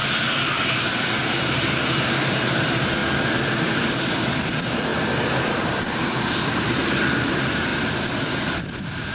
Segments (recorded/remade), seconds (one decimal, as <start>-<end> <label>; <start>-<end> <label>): 0.0-2.3 recorded; 2.3-3.0 remade; 3.0-3.6 recorded; 3.6-4.9 remade; 4.9-5.5 recorded; 5.5-7.7 remade; 7.7-8.4 recorded; 8.4-9.1 remade

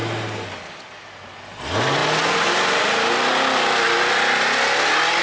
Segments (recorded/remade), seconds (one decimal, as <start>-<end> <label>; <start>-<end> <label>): 0.0-5.2 recorded